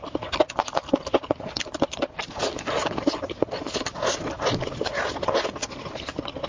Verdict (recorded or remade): recorded